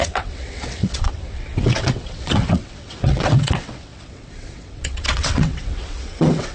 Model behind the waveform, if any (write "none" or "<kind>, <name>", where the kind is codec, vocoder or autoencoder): vocoder, WaveNeXt